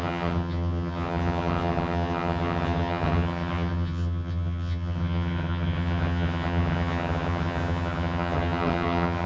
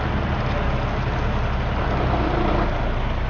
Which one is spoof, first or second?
first